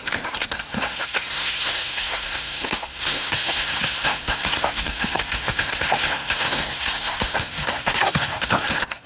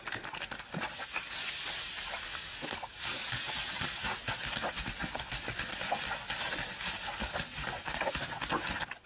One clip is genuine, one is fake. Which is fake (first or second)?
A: first